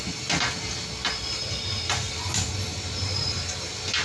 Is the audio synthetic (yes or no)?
no